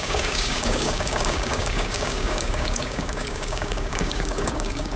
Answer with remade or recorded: remade